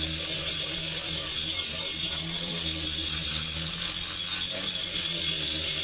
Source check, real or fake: real